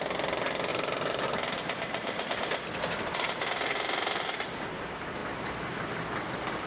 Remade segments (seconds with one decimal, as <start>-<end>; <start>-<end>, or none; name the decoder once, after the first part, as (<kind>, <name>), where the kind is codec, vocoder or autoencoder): 0.7-4.7 (vocoder, BigVGAN v2)